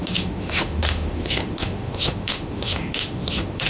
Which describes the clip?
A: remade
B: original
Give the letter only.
A